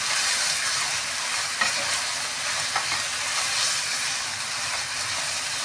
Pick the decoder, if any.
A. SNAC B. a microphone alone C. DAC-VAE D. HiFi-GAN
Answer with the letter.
B